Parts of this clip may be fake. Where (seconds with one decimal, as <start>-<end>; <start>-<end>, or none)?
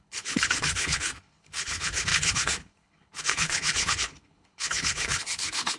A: 0.0-5.8